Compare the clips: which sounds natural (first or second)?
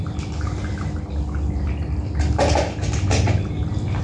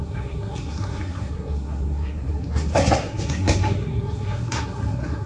first